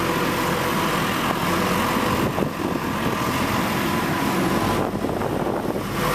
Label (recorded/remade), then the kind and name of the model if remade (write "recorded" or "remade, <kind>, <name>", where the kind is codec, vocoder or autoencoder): recorded